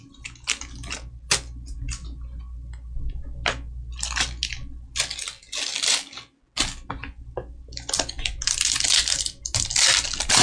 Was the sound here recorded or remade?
recorded